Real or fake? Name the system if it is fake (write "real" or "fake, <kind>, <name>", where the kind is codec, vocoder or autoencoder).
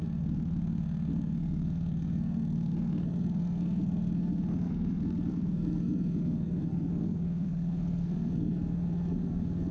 fake, codec, SNAC